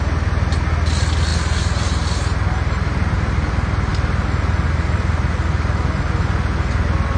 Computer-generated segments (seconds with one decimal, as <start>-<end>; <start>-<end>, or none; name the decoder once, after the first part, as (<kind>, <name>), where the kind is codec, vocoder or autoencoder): none

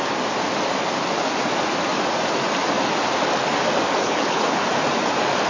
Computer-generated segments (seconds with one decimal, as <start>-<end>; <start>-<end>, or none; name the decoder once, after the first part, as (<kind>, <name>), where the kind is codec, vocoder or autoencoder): 4.0-4.6 (codec, HILCodec)

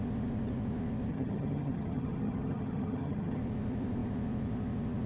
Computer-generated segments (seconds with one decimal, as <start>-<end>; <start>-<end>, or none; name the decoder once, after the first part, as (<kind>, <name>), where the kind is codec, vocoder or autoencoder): 1.1-3.4 (vocoder, HiFi-GAN)